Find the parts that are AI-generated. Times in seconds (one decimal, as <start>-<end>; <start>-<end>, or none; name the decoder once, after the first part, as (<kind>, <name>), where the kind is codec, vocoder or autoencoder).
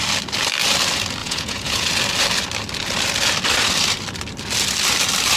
1.2-1.9 (vocoder, Vocos)